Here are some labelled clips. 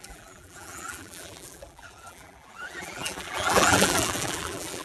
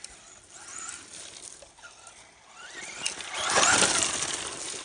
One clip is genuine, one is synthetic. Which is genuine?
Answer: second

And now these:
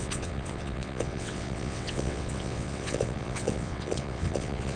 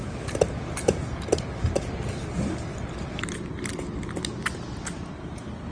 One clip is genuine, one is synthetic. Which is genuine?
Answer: second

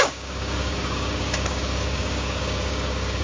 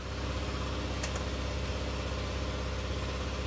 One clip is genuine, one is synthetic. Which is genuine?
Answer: second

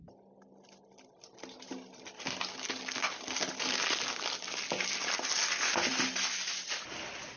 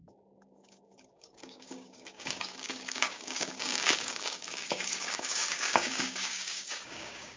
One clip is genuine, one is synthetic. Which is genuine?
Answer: first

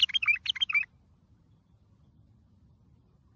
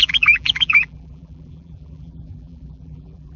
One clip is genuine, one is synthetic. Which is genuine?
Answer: first